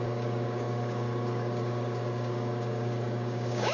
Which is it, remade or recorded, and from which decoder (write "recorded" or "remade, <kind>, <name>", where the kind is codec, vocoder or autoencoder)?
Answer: remade, codec, DAC